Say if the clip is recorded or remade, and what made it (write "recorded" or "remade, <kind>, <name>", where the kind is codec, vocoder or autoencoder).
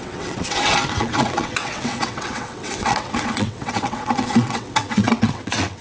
remade, vocoder, WaveNeXt